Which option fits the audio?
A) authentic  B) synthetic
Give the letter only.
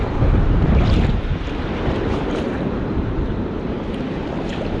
B